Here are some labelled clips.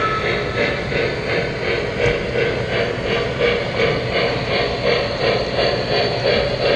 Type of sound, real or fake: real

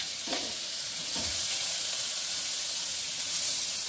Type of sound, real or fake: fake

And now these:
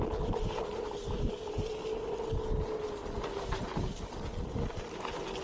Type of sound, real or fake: real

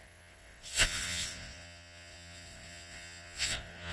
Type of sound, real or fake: fake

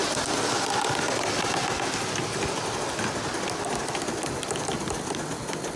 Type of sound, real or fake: real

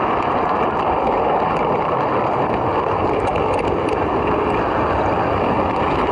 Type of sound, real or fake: real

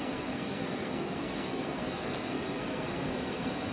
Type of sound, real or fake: fake